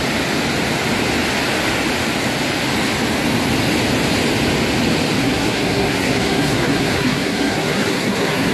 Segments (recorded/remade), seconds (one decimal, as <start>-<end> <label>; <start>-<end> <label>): 0.0-5.2 recorded; 5.2-8.5 remade